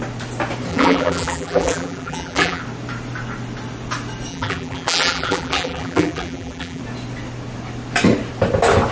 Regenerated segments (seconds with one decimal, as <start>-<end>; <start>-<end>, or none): 0.7-2.6; 4.3-6.8